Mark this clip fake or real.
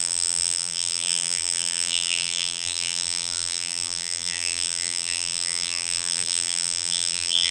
fake